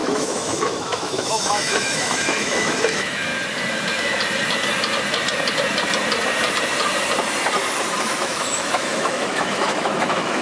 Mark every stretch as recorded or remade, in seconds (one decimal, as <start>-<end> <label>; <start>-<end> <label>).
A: 0.0-3.3 remade; 3.3-8.0 recorded; 8.0-10.4 remade